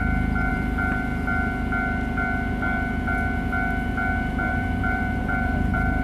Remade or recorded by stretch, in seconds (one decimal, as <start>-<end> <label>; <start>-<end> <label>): 0.0-0.5 recorded; 0.5-1.1 remade; 1.1-4.3 recorded; 4.3-6.0 remade